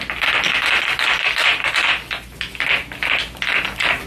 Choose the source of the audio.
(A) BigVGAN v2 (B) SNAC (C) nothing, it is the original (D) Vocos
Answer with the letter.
C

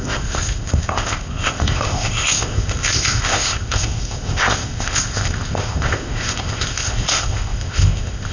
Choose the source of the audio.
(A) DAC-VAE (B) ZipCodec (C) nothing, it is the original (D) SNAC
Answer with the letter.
B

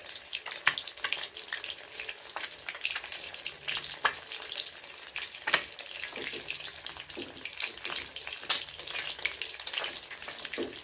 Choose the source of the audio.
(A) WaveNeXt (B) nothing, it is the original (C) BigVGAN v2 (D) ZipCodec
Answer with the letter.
B